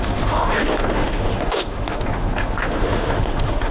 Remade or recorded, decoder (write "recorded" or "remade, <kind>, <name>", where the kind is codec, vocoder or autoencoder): remade, autoencoder, DAC-VAE